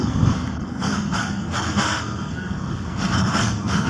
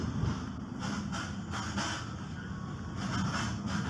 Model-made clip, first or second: first